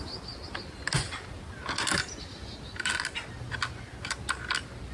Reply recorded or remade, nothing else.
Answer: recorded